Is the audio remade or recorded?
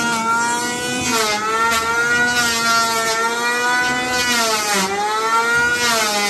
recorded